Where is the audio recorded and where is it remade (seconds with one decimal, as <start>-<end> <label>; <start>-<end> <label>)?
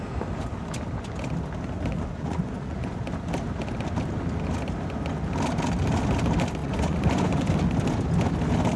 0.0-1.9 recorded; 1.9-3.0 remade; 3.0-6.6 recorded; 6.6-7.5 remade; 7.5-8.8 recorded